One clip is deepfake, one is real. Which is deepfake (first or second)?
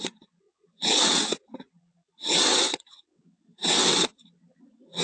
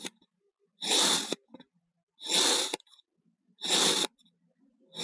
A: first